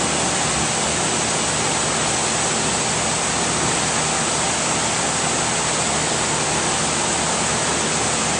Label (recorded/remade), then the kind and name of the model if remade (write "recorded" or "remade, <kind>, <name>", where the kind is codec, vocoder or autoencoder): recorded